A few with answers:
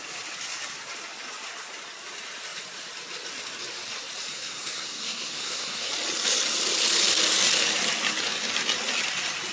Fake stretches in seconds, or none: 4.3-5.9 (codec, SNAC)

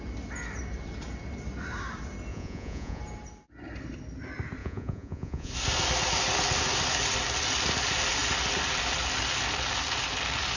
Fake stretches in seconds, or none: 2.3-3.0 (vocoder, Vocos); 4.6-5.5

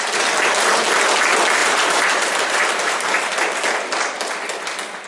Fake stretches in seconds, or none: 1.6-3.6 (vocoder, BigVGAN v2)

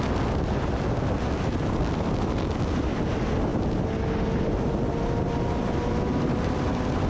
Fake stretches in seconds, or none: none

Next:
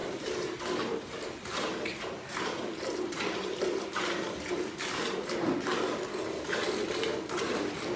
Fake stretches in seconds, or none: 0.0-4.8 (vocoder, BigVGAN v2)

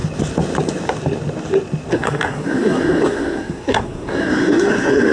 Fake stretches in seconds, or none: 1.9-5.1 (codec, SNAC)

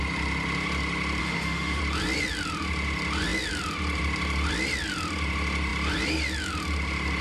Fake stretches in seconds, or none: 1.2-1.8 (autoencoder, DAC-VAE)